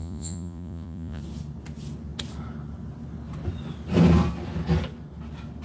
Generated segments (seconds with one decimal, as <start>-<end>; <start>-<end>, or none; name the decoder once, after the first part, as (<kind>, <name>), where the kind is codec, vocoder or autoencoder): 0.0-1.2 (vocoder, Vocos)